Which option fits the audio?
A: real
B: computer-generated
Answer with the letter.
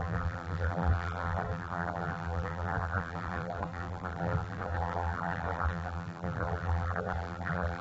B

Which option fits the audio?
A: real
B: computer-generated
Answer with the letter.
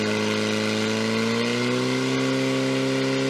A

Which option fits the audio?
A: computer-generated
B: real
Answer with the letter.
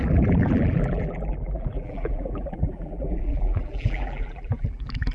A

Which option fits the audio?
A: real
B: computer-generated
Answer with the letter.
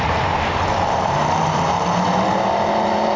B